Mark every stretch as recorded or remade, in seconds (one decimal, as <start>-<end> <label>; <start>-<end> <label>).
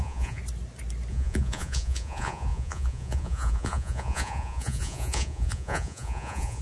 0.0-0.4 remade; 0.4-1.1 recorded; 1.1-6.6 remade